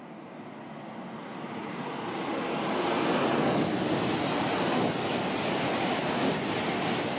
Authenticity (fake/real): real